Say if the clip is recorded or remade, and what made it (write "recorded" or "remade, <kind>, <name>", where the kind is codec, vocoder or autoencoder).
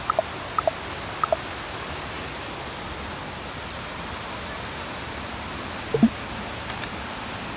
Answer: recorded